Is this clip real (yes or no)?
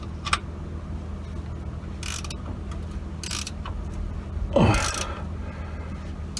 yes